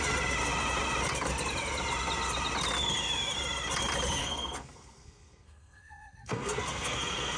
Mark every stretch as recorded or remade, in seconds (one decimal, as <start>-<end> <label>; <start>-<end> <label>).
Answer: 0.0-4.2 recorded; 4.2-7.4 remade